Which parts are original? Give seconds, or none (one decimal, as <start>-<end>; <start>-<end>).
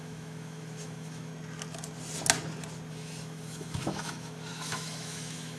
1.3-2.9